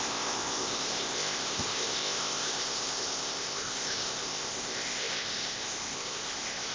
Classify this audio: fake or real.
fake